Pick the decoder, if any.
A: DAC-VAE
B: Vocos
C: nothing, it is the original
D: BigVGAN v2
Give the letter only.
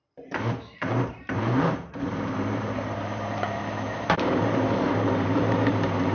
D